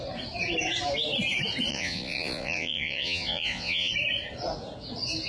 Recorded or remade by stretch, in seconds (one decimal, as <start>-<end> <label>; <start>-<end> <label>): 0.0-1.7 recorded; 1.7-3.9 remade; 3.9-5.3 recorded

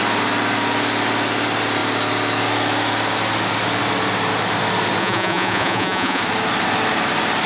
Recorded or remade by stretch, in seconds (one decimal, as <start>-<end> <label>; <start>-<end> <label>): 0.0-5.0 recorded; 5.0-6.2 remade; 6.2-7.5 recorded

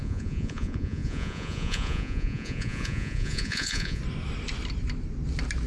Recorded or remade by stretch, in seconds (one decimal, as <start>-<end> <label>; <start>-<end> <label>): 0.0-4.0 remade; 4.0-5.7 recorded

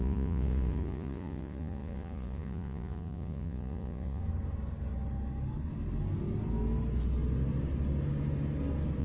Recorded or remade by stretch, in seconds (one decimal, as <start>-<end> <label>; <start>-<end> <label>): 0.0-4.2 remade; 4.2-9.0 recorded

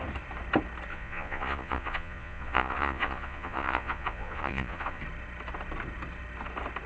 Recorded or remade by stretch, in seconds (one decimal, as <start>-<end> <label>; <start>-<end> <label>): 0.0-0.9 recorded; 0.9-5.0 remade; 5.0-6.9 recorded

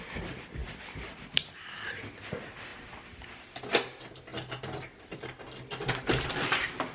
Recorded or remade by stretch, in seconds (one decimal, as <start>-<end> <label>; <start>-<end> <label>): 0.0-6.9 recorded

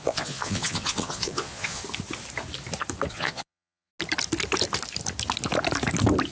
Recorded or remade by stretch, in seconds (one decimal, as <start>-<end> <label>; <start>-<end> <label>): 0.0-1.8 remade; 1.8-3.1 recorded; 3.1-3.9 remade; 3.9-6.3 recorded

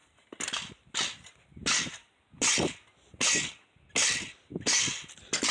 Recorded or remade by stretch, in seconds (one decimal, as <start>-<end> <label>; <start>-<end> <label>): 0.0-5.5 recorded